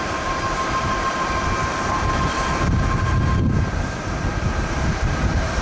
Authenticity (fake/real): fake